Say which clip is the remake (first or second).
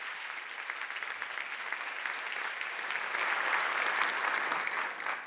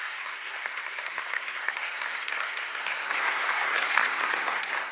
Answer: second